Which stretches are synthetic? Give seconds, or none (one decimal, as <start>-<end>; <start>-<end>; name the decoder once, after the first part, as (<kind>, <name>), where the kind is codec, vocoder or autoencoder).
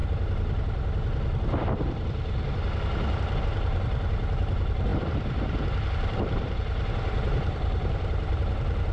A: 3.4-8.9 (vocoder, BigVGAN v2)